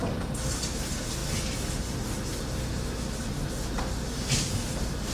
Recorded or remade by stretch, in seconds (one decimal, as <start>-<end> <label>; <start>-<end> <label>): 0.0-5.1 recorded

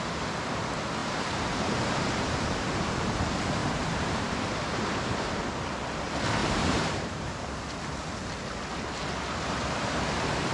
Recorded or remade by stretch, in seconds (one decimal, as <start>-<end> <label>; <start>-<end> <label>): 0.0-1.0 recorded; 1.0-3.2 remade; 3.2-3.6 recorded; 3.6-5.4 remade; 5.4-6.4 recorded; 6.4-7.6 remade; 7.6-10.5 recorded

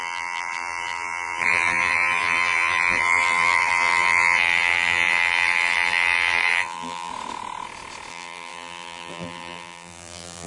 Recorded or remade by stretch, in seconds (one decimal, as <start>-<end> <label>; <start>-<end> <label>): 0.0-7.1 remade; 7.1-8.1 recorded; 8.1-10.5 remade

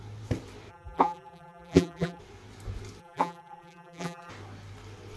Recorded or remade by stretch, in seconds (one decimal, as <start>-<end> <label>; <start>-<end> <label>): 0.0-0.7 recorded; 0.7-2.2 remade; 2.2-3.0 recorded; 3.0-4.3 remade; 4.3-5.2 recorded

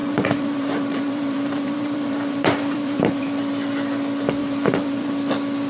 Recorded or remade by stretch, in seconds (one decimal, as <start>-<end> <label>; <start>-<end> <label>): 0.0-3.4 remade; 3.4-4.4 recorded; 4.4-5.1 remade; 5.1-5.7 recorded